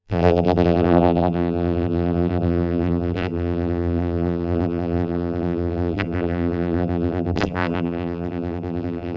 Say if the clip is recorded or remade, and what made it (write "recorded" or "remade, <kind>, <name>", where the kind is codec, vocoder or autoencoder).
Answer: remade, vocoder, BigVGAN v2